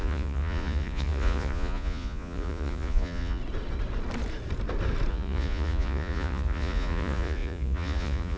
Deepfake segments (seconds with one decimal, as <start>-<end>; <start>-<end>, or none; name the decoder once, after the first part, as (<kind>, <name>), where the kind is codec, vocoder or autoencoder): 0.0-3.4 (vocoder, Vocos); 5.1-8.4